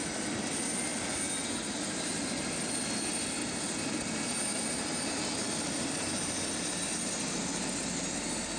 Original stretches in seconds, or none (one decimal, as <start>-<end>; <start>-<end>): 0.0-8.6